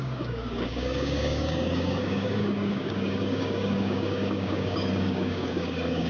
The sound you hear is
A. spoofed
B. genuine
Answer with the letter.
A